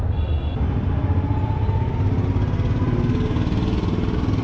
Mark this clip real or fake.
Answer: real